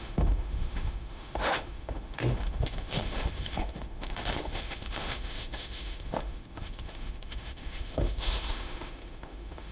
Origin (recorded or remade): remade